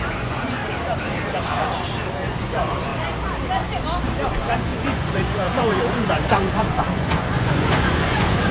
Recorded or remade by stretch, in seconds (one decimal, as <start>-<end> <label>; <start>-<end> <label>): 0.0-0.6 remade; 0.6-2.1 recorded; 2.1-2.9 remade; 2.9-4.3 recorded; 4.3-8.5 remade